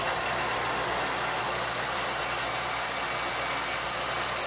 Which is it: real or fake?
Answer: real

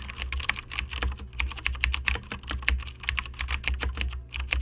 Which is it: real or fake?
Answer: real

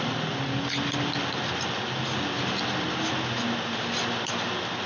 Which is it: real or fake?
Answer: real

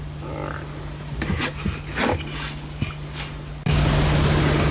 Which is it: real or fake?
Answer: real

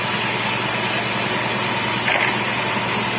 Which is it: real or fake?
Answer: real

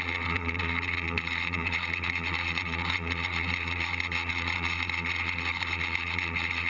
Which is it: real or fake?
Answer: fake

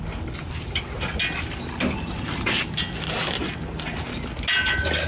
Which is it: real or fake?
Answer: real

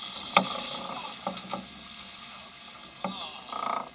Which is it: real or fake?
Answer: real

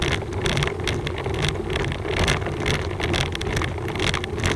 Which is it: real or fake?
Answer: real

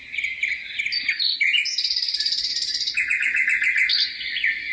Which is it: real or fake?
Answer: real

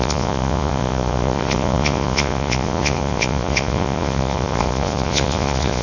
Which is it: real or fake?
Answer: fake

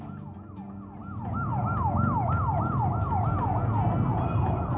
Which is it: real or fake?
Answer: real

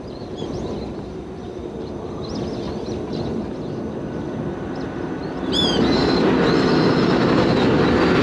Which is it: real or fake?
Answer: real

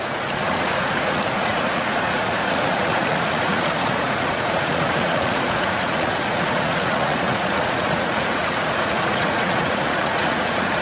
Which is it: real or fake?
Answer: fake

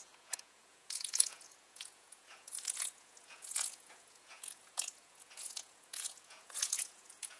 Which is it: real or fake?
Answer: fake